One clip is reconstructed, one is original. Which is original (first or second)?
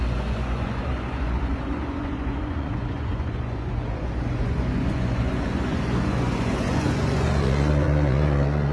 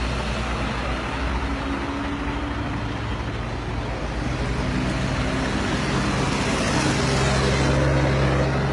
second